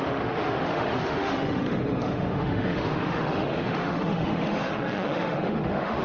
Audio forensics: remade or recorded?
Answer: remade